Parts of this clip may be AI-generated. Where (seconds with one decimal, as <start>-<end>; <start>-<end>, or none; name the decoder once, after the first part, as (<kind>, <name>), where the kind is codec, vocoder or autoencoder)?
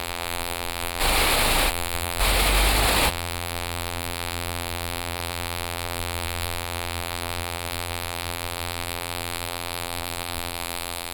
0.0-1.0 (vocoder, BigVGAN v2); 1.7-2.2; 3.1-11.1